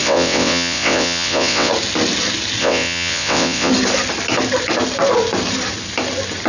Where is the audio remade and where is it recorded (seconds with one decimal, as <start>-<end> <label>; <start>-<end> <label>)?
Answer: 0.0-1.7 remade; 1.7-2.6 recorded; 2.6-3.7 remade; 3.7-6.5 recorded